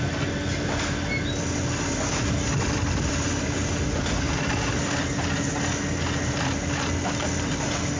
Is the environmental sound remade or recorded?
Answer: recorded